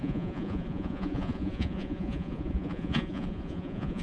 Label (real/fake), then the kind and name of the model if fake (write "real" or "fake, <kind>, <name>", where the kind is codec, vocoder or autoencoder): fake, vocoder, Vocos